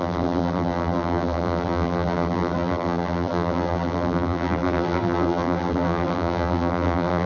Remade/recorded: remade